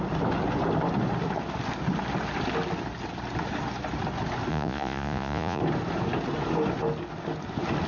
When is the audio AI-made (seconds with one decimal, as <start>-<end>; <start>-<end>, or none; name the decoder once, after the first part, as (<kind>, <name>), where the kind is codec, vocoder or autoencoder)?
4.5-5.6 (vocoder, Vocos)